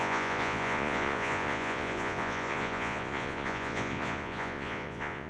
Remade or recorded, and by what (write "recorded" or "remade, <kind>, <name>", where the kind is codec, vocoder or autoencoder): remade, vocoder, Vocos